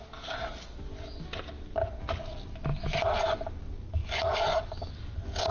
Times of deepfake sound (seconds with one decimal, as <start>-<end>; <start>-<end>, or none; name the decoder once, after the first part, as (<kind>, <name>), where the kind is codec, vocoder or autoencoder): 4.0-4.9 (codec, DAC)